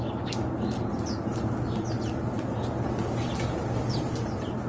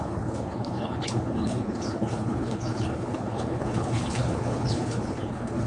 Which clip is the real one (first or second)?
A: first